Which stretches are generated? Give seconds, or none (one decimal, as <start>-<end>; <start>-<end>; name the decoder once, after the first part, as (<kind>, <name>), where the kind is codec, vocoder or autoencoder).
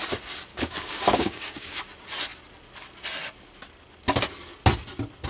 0.5-1.8 (codec, DAC)